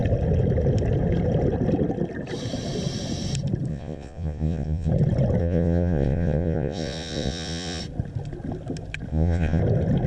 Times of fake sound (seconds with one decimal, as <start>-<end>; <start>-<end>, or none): 3.7-4.9; 5.4-7.8; 9.1-9.6